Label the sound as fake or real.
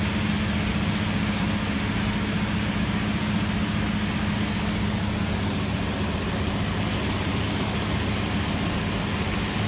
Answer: real